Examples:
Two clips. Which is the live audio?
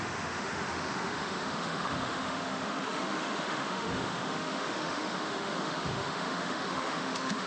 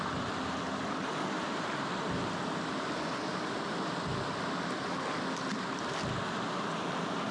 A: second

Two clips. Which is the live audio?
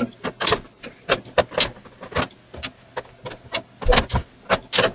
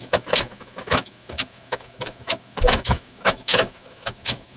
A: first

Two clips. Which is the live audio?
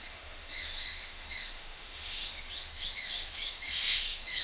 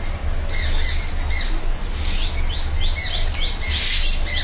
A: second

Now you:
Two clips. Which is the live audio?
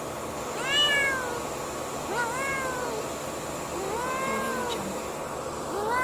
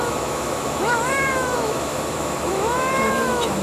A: first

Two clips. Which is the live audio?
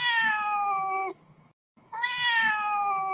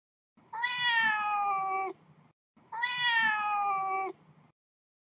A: second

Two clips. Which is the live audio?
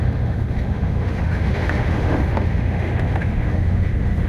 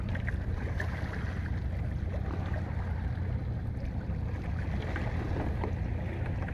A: second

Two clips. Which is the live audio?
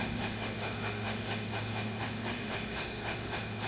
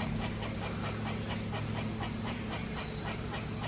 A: second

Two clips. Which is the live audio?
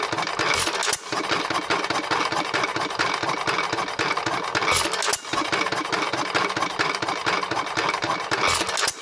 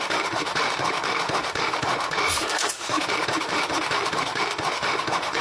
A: first